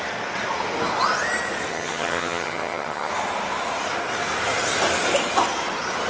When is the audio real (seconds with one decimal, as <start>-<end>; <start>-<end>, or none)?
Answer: 0.0-1.7; 3.1-6.1